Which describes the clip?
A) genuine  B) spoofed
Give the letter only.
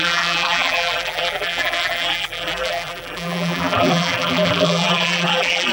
B